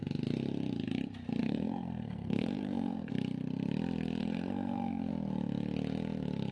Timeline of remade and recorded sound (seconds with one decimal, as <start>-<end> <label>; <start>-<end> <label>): 0.0-1.4 recorded; 1.4-3.1 remade; 3.1-4.2 recorded; 4.2-5.1 remade; 5.1-6.5 recorded